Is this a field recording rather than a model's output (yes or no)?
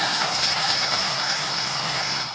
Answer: no